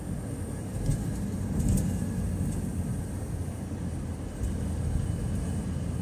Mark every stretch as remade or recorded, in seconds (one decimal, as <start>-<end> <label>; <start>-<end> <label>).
0.0-6.0 recorded